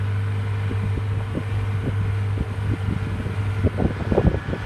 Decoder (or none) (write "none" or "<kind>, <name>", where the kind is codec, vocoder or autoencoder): none